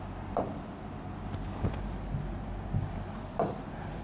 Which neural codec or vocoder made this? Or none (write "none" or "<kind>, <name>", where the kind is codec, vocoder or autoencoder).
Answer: none